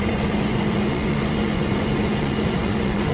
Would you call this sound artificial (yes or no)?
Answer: yes